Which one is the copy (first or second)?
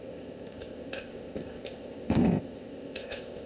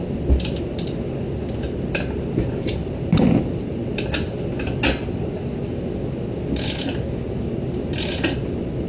first